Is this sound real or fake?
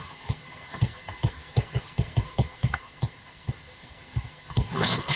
fake